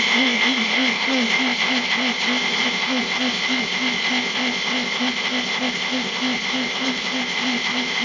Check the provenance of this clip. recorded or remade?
remade